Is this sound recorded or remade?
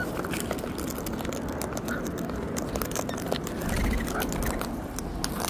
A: recorded